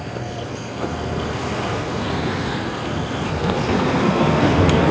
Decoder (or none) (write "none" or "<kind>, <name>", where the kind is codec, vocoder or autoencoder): codec, SNAC